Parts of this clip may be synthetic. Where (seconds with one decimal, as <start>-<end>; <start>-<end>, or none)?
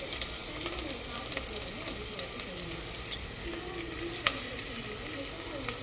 none